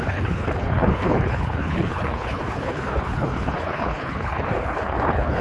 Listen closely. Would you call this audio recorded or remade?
remade